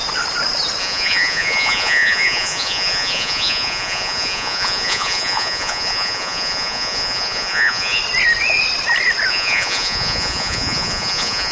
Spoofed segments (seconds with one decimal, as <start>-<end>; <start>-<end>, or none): 0.8-8.0; 9.3-11.5